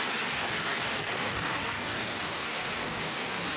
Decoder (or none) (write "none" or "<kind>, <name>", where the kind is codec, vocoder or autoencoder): codec, DAC